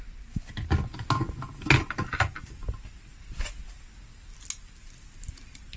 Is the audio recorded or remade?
recorded